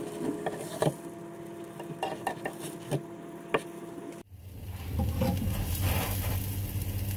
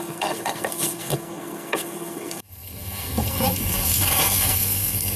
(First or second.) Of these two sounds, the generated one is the second